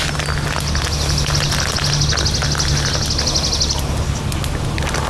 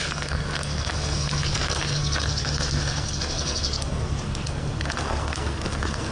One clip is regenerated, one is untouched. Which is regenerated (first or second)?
second